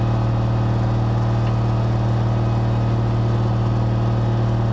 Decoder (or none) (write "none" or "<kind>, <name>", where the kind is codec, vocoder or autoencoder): none